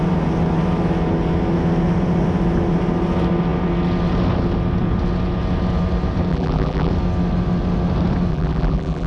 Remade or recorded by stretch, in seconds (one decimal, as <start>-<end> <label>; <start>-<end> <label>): 0.0-6.3 recorded; 6.3-6.9 remade; 6.9-8.3 recorded; 8.3-9.1 remade